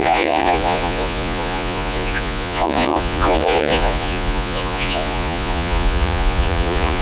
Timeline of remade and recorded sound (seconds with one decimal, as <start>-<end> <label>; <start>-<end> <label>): 0.0-7.0 remade